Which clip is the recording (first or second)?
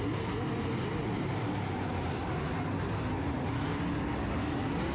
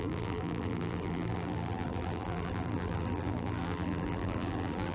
first